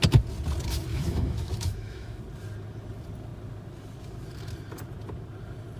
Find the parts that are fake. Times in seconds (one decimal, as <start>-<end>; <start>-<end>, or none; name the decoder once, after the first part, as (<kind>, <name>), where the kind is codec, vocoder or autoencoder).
0.9-2.2 (autoencoder, DAC-VAE)